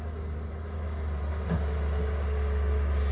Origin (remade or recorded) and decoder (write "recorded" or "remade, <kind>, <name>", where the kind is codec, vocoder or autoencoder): recorded